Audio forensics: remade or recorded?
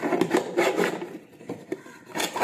recorded